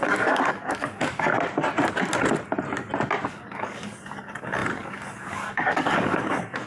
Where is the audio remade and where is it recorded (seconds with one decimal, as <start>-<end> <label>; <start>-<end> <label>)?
0.0-1.3 remade; 1.3-3.3 recorded; 3.3-6.7 remade